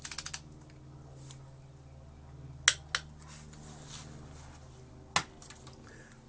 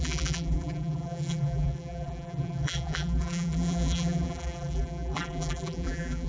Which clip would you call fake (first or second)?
second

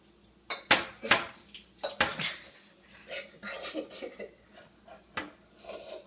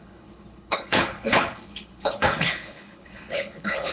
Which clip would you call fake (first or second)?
second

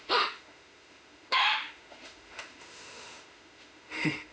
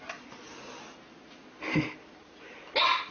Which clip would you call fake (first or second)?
first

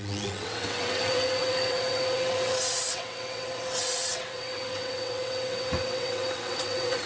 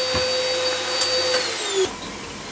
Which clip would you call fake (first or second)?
first